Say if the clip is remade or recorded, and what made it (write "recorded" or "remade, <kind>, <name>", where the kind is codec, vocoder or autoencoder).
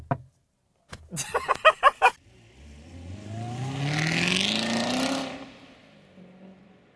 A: recorded